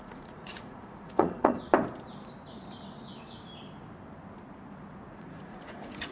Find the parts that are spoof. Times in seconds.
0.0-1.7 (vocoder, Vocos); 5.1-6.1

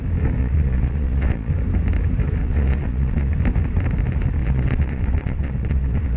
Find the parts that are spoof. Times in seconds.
0.4-1.5 (vocoder, Vocos); 2.4-3.3; 4.4-6.2